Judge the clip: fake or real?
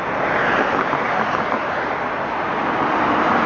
real